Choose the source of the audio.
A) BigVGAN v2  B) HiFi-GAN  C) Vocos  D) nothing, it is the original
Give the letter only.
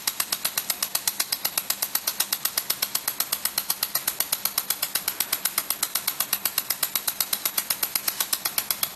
D